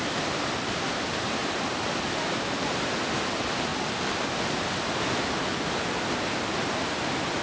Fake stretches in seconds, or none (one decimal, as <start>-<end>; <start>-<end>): 1.4-2.8